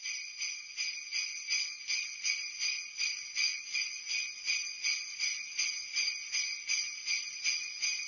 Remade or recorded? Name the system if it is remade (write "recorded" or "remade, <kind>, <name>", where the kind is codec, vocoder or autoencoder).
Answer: recorded